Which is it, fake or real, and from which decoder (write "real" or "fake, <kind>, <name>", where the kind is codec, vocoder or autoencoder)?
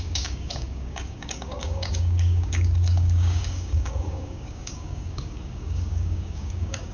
fake, codec, DAC